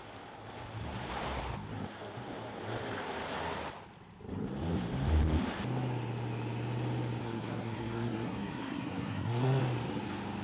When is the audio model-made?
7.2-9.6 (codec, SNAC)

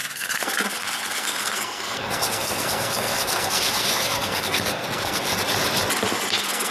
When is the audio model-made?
0.0-5.3 (codec, SNAC); 6.3-6.7

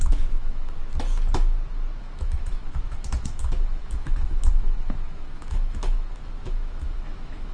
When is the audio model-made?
0.0-0.8 (autoencoder, DAC-VAE); 2.0-7.5

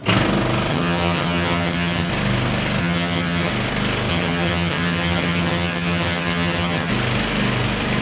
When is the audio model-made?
0.7-2.1 (vocoder, HiFi-GAN); 2.8-3.5; 4.1-6.9

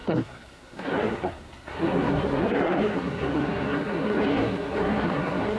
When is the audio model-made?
0.0-5.6 (codec, SNAC)

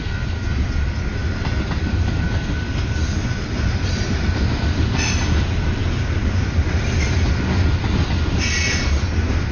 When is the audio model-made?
none

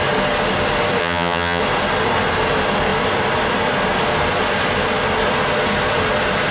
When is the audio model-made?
1.0-1.6 (vocoder, HiFi-GAN)